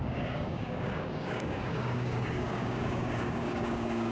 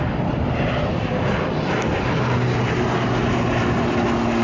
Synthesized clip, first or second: first